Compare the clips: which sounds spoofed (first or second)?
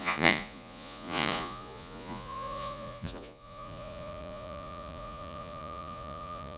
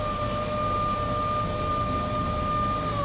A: first